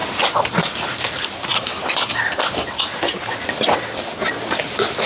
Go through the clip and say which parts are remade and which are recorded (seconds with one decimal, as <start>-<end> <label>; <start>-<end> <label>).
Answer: 0.0-5.1 recorded